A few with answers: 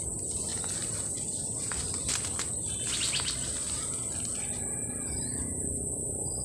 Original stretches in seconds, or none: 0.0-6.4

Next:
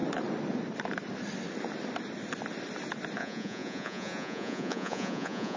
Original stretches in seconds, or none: 0.0-3.2

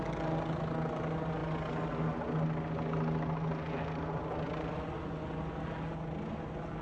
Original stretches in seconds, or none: 0.0-6.8

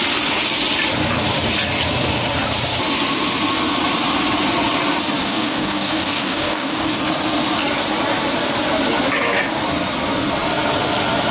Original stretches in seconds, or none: 0.0-5.2; 7.0-11.3

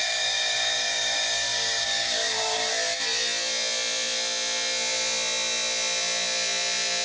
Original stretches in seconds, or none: 2.7-7.0